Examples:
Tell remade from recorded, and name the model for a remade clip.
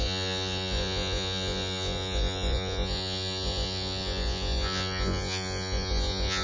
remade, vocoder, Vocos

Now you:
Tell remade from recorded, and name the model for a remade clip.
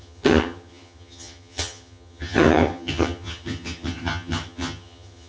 remade, vocoder, HiFi-GAN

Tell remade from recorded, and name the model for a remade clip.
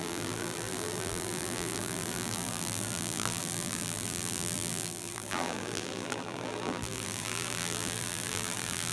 remade, vocoder, BigVGAN v2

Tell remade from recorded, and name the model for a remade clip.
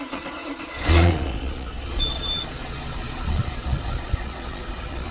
remade, vocoder, Vocos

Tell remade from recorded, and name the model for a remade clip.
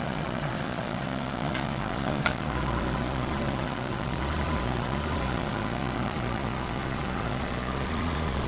remade, vocoder, Vocos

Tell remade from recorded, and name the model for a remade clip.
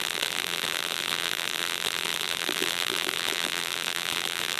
remade, vocoder, BigVGAN v2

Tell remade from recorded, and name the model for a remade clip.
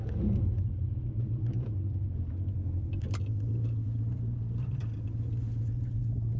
recorded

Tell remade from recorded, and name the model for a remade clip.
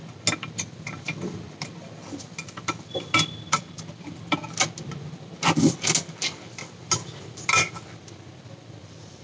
recorded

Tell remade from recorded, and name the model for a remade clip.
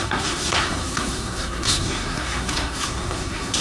remade, codec, SNAC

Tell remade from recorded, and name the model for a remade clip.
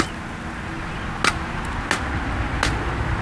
recorded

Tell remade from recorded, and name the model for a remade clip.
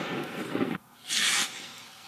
remade, codec, SNAC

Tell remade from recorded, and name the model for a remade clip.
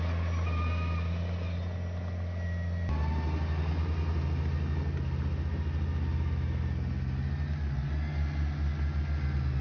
recorded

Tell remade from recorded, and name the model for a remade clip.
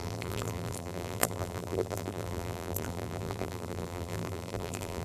remade, vocoder, BigVGAN v2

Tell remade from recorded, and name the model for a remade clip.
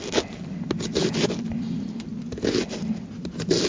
recorded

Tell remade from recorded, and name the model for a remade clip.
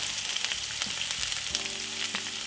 recorded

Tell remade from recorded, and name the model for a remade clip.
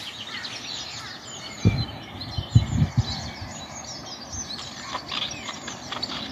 recorded